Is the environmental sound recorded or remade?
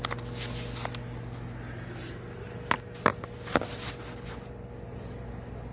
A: recorded